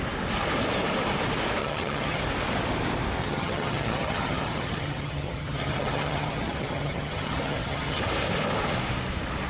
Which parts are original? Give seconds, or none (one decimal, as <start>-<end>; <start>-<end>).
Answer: 0.0-1.6; 2.2-3.2; 8.0-9.5

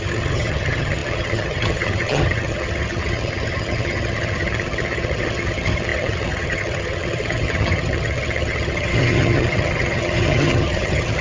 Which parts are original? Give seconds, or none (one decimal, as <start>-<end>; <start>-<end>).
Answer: none

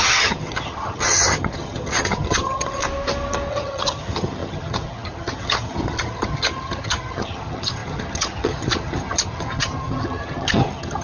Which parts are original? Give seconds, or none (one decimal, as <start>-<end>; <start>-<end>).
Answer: 2.8-3.5